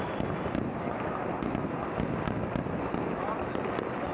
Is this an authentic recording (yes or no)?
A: yes